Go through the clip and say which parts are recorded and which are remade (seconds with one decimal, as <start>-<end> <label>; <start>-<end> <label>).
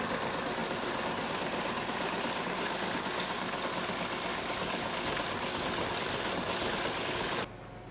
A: 0.0-4.3 recorded; 4.3-5.0 remade; 5.0-7.9 recorded